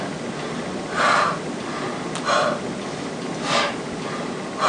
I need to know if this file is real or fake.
real